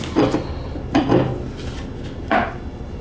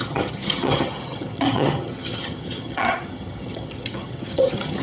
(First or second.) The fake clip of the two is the second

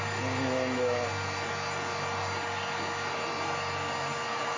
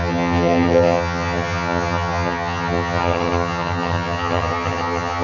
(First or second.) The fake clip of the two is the second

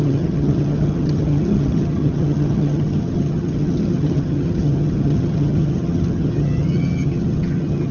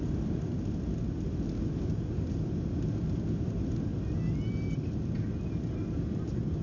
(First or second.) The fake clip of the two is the first